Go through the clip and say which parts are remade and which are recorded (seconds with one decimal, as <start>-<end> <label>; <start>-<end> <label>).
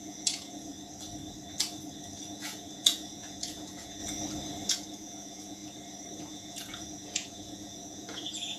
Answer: 0.0-0.7 remade; 0.7-2.3 recorded; 2.3-4.0 remade; 4.0-4.7 recorded; 4.7-5.6 remade; 5.6-6.2 recorded; 6.2-8.6 remade